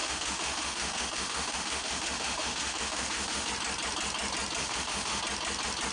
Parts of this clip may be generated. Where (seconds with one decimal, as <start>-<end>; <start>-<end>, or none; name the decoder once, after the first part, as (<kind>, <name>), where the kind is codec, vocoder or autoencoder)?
0.0-3.5 (autoencoder, DAC-VAE); 4.6-5.2